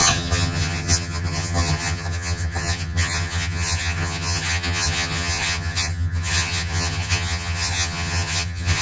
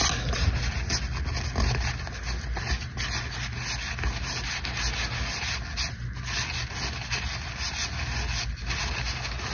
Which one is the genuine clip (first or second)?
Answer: second